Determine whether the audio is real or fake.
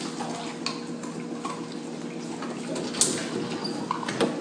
real